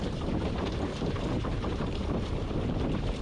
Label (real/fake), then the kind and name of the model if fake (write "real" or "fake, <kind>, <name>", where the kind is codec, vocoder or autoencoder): fake, vocoder, BigVGAN v2